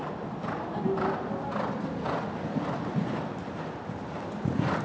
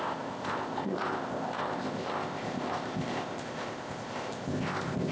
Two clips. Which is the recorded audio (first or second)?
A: first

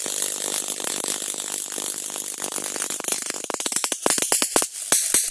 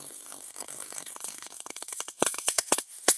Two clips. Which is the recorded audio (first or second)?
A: first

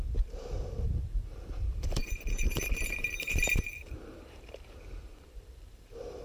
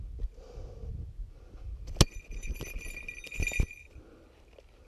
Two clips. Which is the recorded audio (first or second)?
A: second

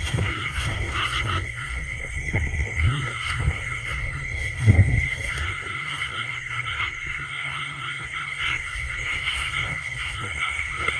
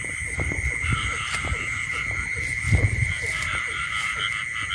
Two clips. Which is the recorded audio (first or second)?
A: second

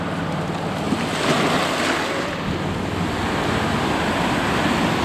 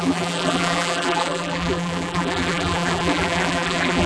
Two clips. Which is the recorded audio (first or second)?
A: first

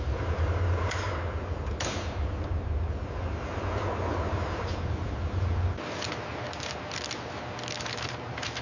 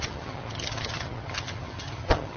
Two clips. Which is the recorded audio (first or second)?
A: first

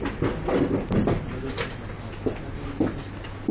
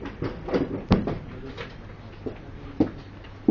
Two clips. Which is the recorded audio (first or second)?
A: first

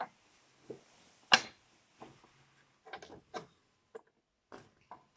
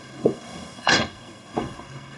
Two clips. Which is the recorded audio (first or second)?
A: first